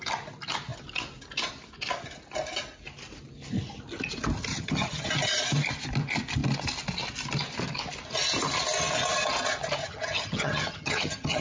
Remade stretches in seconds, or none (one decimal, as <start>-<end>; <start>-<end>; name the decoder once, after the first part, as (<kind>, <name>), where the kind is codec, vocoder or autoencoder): 4.5-5.1 (vocoder, HiFi-GAN); 9.8-11.4